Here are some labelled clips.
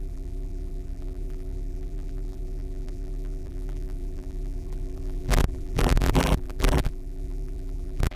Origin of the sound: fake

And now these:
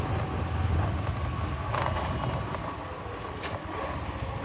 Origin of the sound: real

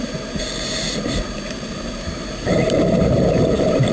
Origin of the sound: fake